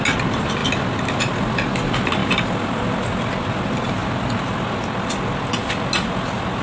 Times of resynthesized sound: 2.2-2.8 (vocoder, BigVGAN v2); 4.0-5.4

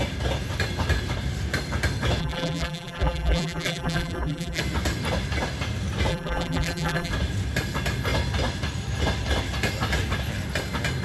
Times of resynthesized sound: 2.2-4.6 (vocoder, BigVGAN v2); 6.1-7.1

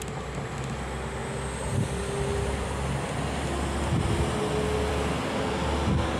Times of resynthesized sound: none

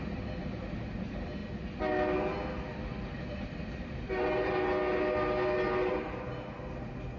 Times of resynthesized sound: 0.0-1.4 (vocoder, BigVGAN v2); 3.1-4.5; 5.9-7.2

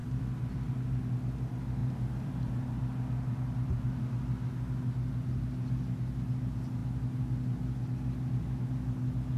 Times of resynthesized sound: 0.0-0.7 (vocoder, BigVGAN v2); 1.8-2.3